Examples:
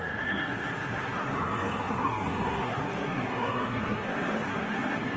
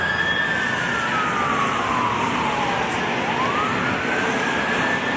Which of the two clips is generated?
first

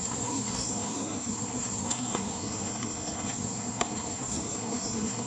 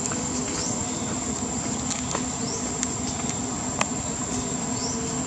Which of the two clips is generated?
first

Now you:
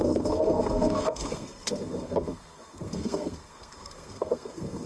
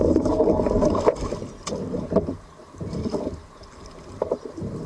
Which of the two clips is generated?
first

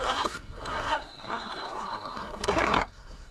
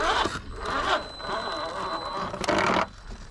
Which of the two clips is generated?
first